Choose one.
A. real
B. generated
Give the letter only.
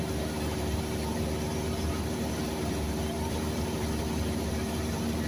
B